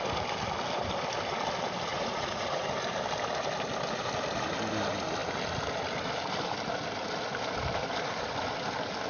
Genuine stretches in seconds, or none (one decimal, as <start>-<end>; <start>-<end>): 0.0-1.9; 2.7-9.1